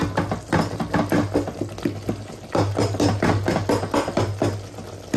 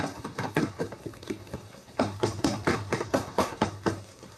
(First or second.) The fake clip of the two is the second